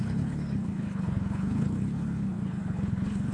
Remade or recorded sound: remade